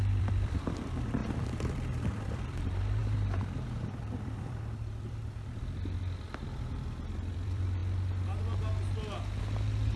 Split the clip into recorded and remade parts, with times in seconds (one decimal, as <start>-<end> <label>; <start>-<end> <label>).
0.0-7.8 remade; 7.8-9.4 recorded; 9.4-10.0 remade